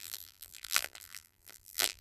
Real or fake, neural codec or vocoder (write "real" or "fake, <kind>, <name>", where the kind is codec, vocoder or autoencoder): fake, vocoder, BigVGAN v2